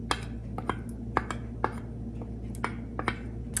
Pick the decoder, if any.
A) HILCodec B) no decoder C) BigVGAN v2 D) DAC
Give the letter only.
B